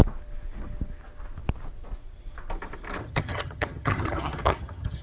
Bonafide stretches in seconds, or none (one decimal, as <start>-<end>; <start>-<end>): 0.0-3.0